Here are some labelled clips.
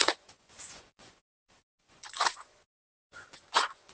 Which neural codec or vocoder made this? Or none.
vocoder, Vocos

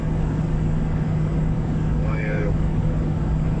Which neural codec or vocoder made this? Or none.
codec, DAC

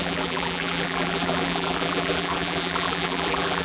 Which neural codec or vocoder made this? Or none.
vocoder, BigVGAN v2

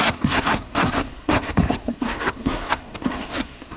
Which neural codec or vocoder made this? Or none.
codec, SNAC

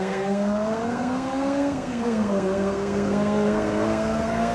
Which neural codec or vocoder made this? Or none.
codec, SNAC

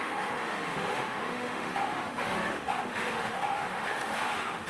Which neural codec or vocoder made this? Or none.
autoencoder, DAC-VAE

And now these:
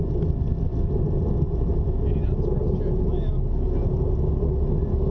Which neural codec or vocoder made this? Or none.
none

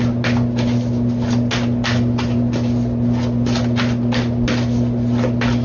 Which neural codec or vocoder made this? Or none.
none